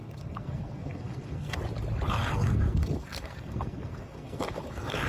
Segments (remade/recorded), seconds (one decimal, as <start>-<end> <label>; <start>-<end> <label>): 0.0-1.6 remade; 1.6-2.1 recorded; 2.1-5.1 remade